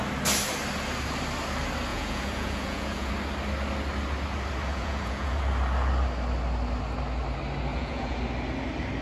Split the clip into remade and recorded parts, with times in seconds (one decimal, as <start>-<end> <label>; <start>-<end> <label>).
0.0-1.9 recorded; 1.9-3.1 remade; 3.1-4.7 recorded; 4.7-5.4 remade; 5.4-7.7 recorded; 7.7-8.2 remade; 8.2-9.0 recorded